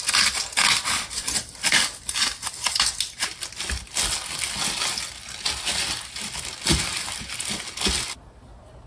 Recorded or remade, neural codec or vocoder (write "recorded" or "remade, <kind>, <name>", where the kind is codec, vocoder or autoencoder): recorded